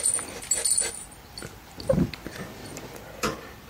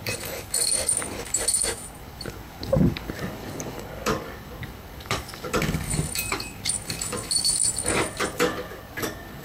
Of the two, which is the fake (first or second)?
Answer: second